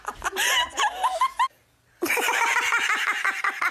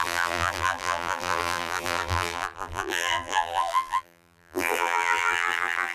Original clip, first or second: first